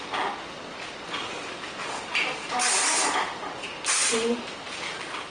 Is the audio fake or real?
real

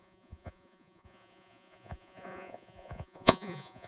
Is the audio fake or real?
fake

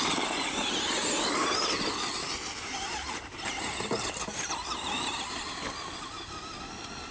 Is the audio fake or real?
real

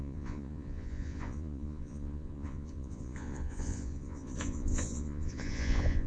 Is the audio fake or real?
fake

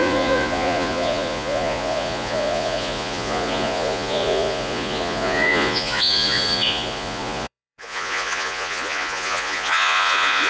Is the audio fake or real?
fake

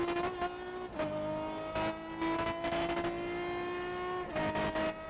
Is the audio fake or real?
real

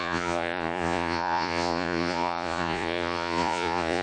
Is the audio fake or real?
fake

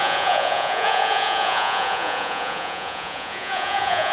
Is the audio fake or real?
fake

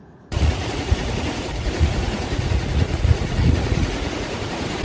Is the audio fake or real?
fake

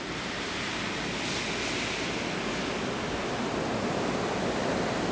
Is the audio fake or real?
real